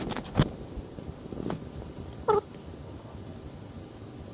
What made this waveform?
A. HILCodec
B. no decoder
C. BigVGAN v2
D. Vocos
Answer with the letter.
B